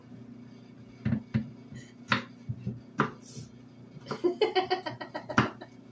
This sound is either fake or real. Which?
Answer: real